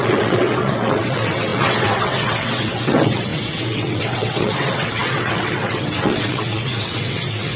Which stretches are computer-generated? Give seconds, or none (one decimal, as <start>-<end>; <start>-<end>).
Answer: 0.0-7.6